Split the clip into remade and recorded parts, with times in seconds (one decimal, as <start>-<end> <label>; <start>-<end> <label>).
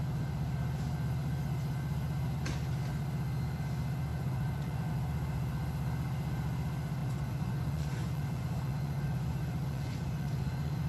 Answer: 0.0-4.1 recorded; 4.1-4.9 remade; 4.9-7.0 recorded; 7.0-10.9 remade